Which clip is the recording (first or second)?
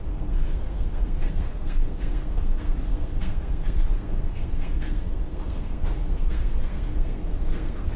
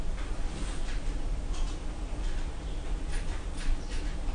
second